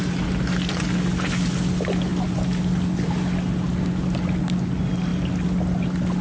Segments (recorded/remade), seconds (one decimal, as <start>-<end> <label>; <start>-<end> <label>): 0.0-6.2 recorded